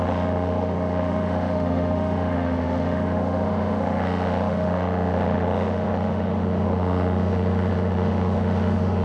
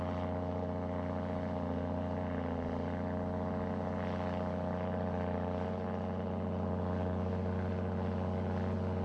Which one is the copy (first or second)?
first